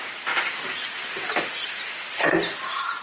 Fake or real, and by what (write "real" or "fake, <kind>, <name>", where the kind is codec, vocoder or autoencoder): fake, vocoder, BigVGAN v2